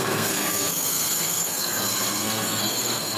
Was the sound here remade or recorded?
remade